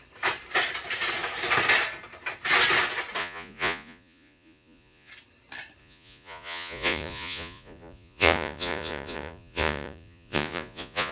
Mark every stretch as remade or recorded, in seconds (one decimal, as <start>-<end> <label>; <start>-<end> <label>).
0.0-3.2 recorded; 3.2-5.1 remade; 5.1-5.8 recorded; 5.8-11.1 remade